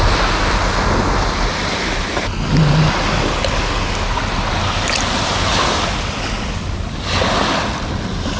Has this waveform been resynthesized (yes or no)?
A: no